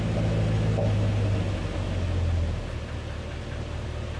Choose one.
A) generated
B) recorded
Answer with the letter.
B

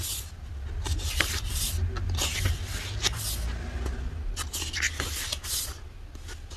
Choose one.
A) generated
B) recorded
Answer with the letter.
B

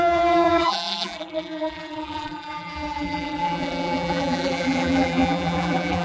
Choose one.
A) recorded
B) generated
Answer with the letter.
B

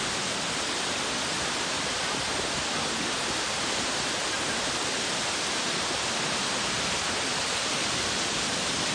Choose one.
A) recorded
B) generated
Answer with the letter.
A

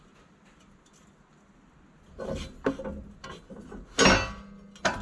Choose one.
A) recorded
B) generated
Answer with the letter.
A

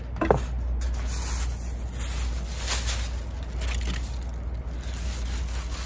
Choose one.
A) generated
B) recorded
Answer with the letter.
B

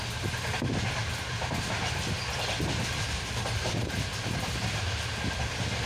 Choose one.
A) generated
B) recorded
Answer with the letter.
B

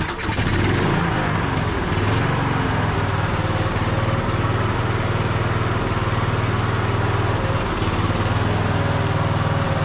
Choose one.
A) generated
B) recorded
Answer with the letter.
B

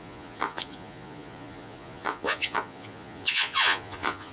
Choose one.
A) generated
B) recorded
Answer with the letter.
A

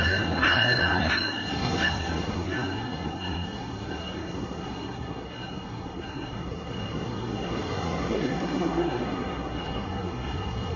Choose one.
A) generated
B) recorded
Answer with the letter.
A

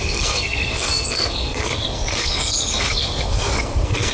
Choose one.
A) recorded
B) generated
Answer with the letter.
B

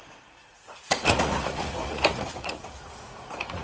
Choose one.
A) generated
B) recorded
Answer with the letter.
A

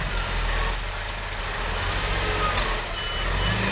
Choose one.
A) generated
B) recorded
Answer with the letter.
B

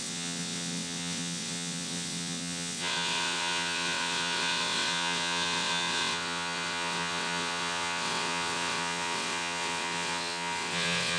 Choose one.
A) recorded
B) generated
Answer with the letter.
B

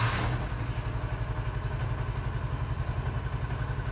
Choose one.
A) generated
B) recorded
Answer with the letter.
B